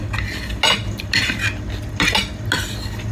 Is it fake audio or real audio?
real